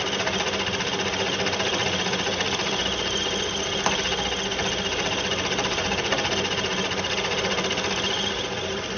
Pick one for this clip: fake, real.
real